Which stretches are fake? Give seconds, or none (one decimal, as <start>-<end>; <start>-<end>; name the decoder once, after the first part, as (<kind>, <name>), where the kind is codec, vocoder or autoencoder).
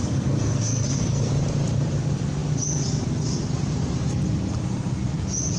0.0-1.3 (codec, SNAC)